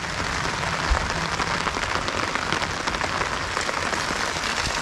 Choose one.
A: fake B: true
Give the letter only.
B